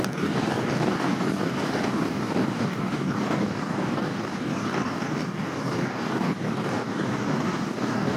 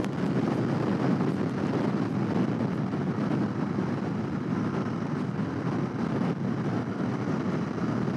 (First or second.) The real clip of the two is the second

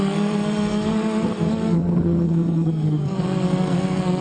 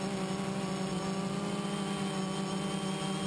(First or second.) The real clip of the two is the second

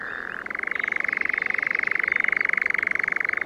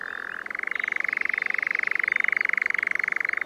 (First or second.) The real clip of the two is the second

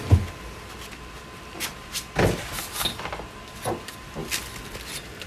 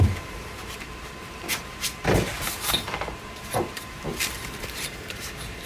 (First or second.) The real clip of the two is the first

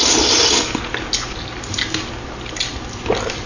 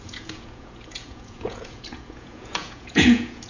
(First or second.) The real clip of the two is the first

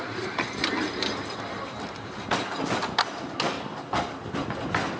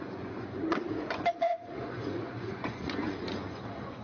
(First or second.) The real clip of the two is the first